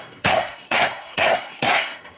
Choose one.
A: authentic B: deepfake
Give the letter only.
B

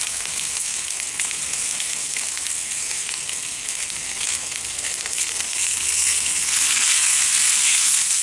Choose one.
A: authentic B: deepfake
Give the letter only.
B